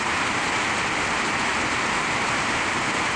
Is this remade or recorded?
recorded